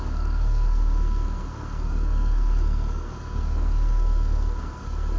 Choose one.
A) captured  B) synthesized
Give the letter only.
B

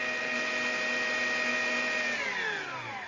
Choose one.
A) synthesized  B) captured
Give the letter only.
B